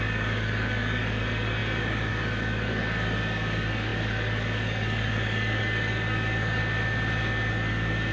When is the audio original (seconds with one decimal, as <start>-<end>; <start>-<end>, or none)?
6.6-7.5